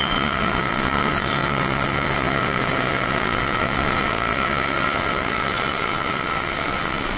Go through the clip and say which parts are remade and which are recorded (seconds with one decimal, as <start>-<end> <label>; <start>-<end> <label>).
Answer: 0.0-7.2 remade